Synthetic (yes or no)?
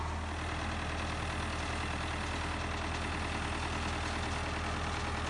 no